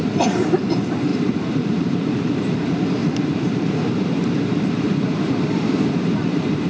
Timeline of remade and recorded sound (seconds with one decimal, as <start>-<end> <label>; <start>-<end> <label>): 0.0-6.7 remade